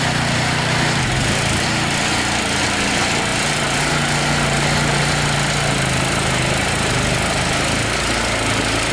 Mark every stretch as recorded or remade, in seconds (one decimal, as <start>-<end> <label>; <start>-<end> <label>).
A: 0.0-8.9 recorded